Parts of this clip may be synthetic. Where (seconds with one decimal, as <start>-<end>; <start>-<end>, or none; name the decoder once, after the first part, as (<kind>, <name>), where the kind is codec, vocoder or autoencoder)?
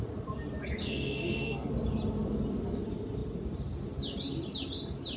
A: 0.8-1.7 (codec, SNAC)